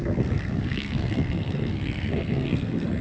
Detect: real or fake fake